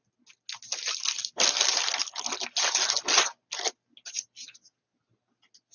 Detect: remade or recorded recorded